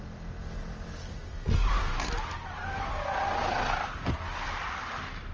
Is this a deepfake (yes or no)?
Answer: no